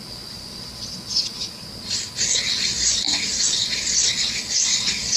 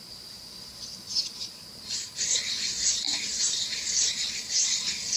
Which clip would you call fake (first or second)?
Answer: second